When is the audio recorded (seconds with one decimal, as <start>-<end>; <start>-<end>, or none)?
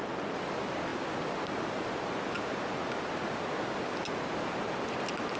0.0-5.4